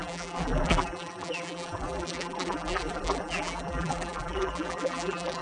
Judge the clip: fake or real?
fake